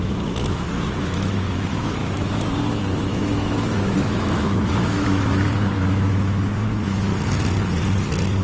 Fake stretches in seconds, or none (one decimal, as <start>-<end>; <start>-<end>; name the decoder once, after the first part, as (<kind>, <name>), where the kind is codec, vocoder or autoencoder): 0.0-7.1 (autoencoder, DAC-VAE)